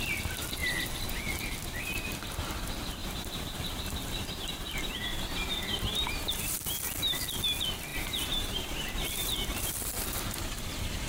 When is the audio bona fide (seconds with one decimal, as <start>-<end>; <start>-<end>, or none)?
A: 0.0-3.0; 7.2-7.9; 9.7-11.1